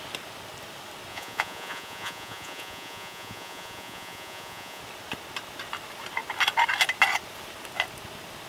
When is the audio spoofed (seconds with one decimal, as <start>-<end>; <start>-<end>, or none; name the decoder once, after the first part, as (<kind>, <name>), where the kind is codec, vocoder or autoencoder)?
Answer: 1.1-4.8 (vocoder, Vocos)